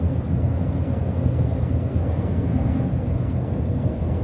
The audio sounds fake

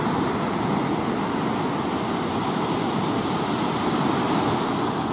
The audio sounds real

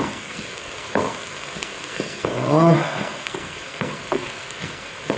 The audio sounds fake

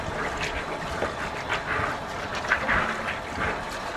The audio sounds real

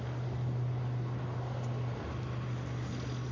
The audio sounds real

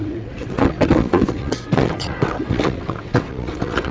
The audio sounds fake